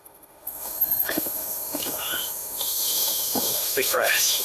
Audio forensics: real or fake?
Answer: fake